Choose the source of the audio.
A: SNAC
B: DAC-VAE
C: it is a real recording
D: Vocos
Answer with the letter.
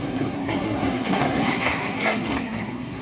A